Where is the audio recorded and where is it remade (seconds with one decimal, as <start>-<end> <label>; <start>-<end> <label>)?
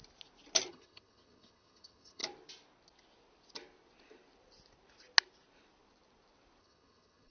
0.0-0.7 recorded; 0.7-2.2 remade; 2.2-6.6 recorded; 6.6-7.3 remade